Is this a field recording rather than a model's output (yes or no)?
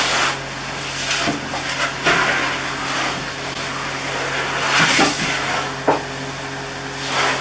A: yes